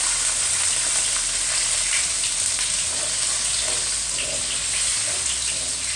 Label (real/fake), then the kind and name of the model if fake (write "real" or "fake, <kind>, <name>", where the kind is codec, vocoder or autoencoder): real